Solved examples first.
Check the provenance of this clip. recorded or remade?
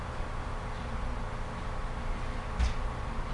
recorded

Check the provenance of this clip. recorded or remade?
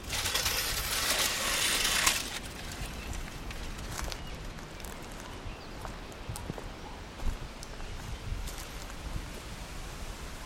recorded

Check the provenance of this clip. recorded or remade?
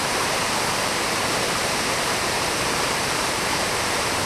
remade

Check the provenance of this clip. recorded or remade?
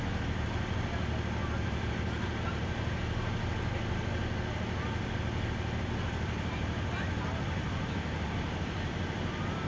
recorded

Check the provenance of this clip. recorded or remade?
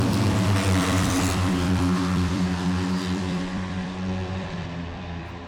remade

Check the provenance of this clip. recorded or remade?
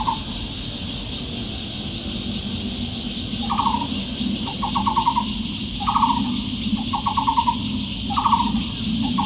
recorded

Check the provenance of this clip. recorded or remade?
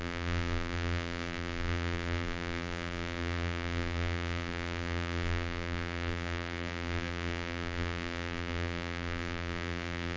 remade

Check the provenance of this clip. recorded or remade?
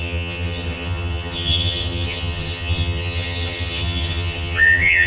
remade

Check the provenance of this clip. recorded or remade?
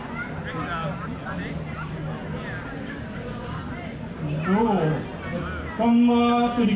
recorded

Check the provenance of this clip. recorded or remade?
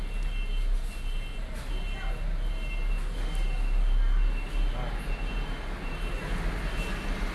recorded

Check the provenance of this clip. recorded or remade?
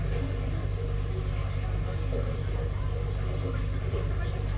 recorded